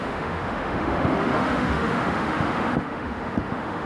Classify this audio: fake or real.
fake